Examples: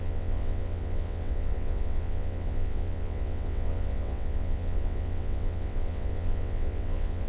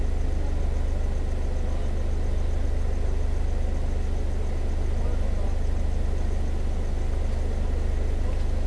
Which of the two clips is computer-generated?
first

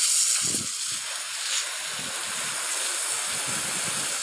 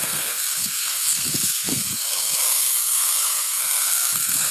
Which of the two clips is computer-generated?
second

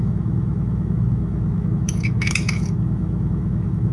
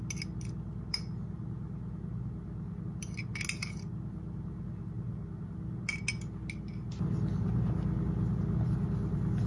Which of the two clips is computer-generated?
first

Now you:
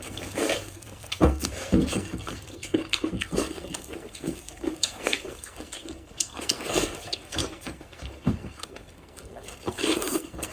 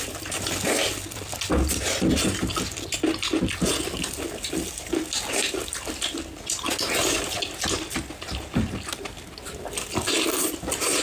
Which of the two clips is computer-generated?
first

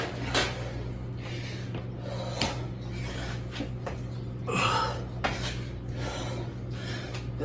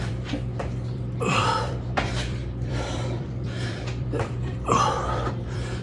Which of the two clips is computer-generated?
second